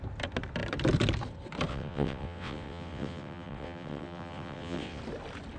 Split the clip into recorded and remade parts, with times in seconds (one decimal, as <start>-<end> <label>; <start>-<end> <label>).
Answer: 0.0-1.7 recorded; 1.7-5.0 remade; 5.0-5.6 recorded